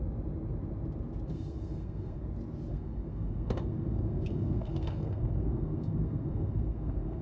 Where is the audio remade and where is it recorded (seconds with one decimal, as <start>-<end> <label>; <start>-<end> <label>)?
0.0-1.3 recorded; 1.3-2.2 remade; 2.2-2.7 recorded; 2.7-7.2 remade